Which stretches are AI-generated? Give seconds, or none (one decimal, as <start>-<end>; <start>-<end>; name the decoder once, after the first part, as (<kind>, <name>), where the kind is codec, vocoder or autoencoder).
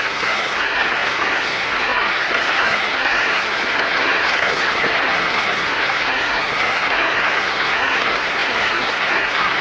0.0-9.6 (codec, SNAC)